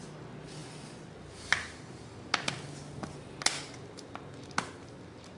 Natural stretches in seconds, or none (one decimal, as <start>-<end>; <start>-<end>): 0.0-5.4